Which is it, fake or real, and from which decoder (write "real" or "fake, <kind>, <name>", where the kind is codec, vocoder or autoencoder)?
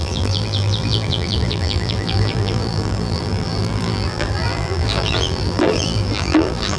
fake, vocoder, BigVGAN v2